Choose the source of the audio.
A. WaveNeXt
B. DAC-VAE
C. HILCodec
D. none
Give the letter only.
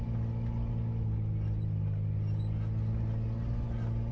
D